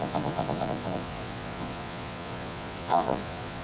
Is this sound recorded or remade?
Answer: remade